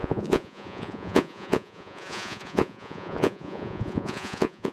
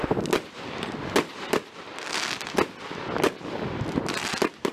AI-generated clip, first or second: first